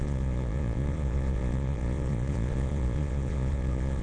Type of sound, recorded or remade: remade